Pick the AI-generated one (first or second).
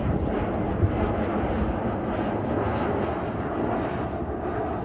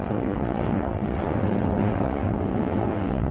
second